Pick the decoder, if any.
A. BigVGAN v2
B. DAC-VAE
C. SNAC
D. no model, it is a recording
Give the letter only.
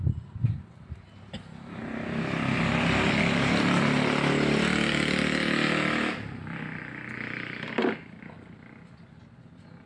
D